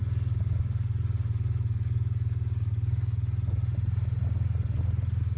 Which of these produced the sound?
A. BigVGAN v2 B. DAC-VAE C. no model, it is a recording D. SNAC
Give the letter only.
C